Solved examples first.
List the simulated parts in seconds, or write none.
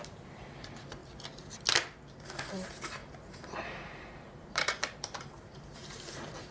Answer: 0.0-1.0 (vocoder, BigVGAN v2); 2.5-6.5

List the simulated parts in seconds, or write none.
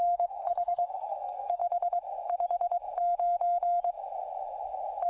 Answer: 0.0-1.6 (codec, SNAC)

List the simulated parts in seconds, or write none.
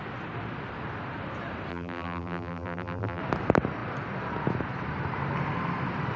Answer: 1.7-3.2 (vocoder, BigVGAN v2)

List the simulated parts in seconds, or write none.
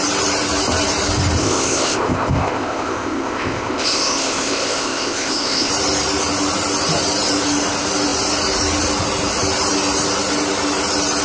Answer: 1.4-5.7 (codec, ZipCodec)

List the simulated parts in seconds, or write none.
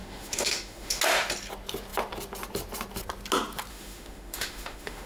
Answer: 0.0-1.0 (autoencoder, DAC-VAE); 3.7-5.1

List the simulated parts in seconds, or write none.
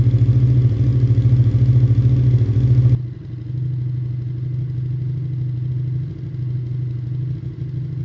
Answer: none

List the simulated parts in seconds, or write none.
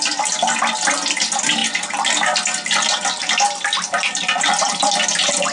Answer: none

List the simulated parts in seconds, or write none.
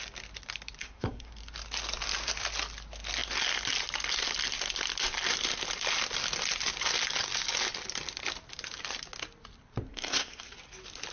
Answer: 0.8-1.3 (codec, SNAC); 9.9-10.5